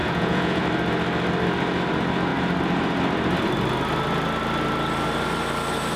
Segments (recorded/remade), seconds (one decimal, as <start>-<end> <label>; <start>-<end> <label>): 0.0-0.6 remade; 0.6-6.0 recorded